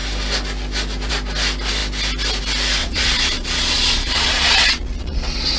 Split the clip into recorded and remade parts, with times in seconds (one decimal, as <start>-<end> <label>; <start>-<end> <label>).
0.0-2.8 recorded; 2.8-5.6 remade